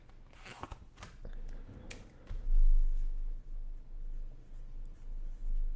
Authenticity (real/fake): real